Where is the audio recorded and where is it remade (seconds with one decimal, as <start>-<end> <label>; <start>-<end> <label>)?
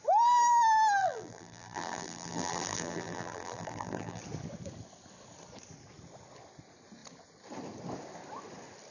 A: 0.0-1.0 recorded; 1.0-4.2 remade; 4.2-8.9 recorded